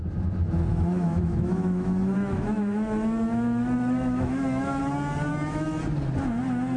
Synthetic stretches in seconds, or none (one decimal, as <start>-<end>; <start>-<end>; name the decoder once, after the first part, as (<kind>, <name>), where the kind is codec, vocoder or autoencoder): 0.7-4.8 (autoencoder, DAC-VAE); 5.3-5.8